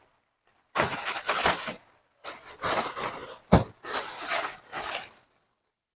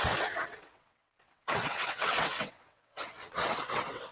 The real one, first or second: first